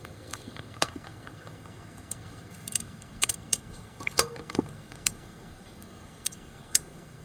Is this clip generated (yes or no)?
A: yes